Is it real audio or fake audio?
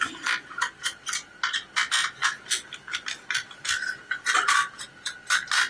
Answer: real